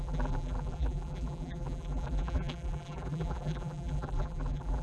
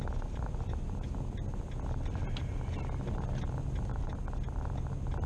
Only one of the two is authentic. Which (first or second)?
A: second